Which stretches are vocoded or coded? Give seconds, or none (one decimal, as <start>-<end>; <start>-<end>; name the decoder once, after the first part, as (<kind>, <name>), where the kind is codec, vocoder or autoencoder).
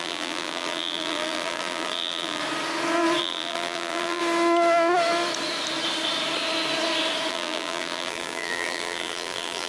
0.0-2.4 (vocoder, BigVGAN v2); 3.2-4.2; 7.3-9.7